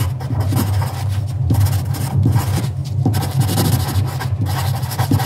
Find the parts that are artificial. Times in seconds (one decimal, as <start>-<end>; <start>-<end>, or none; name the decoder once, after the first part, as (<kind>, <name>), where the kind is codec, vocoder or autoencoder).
none